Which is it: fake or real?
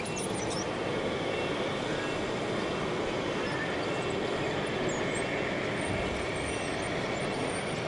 real